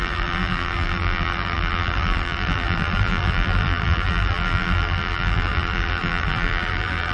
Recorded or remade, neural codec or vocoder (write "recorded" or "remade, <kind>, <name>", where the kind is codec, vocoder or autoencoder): remade, vocoder, BigVGAN v2